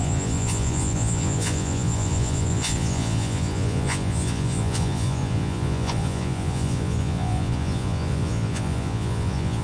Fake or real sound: fake